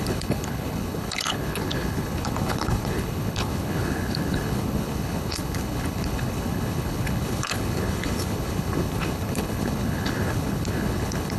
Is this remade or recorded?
remade